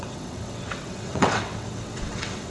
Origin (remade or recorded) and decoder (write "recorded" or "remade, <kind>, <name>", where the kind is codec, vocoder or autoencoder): remade, vocoder, WaveNeXt